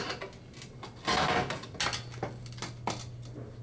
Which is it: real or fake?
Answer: real